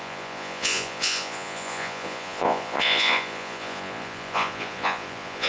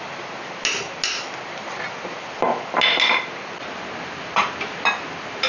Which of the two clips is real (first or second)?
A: second